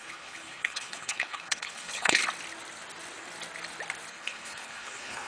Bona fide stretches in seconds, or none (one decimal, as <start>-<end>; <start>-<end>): 2.2-4.1